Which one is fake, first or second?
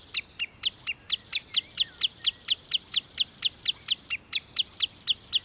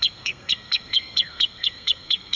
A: second